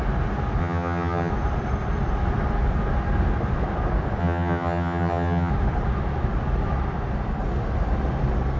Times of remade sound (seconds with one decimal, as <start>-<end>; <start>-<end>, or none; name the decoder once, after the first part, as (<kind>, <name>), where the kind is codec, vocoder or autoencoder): 0.6-1.3 (vocoder, HiFi-GAN); 4.2-5.5